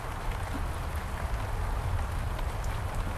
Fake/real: real